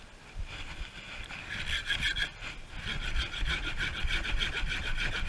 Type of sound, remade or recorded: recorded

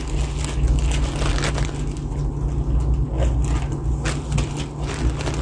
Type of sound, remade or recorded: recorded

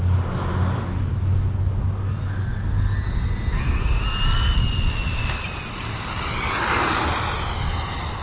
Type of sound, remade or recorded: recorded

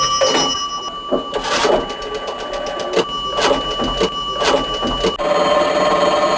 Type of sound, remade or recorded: recorded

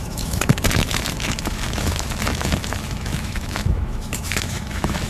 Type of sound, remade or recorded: remade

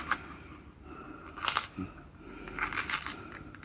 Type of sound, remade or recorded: recorded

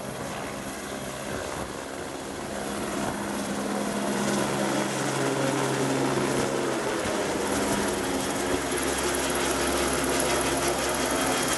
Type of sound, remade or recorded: recorded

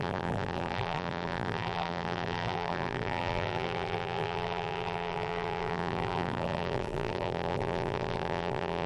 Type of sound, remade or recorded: remade